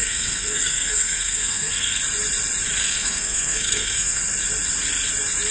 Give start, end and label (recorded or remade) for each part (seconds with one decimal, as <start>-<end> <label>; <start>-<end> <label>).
0.0-2.0 remade; 2.0-2.8 recorded; 2.8-4.2 remade; 4.2-5.5 recorded